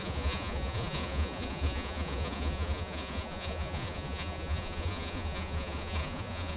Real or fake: fake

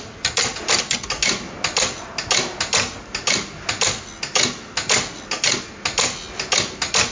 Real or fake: real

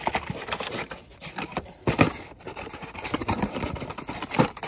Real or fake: real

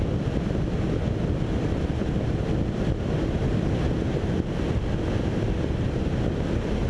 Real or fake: real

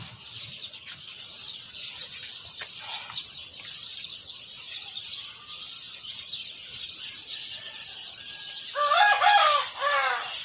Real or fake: real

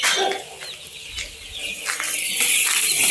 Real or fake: real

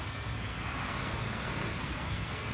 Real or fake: fake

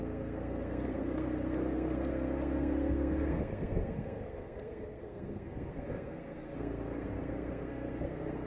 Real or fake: fake